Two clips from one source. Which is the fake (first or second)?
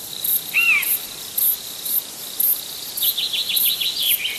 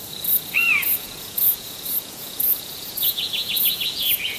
second